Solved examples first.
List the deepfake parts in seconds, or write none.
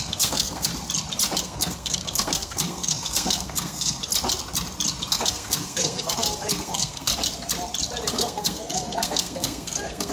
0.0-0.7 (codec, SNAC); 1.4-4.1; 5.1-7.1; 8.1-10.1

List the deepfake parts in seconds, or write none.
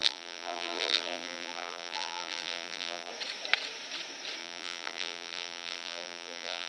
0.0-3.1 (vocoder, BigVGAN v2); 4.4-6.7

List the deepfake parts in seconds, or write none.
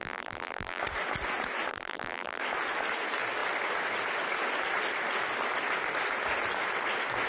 0.0-0.8 (vocoder, BigVGAN v2); 1.7-2.4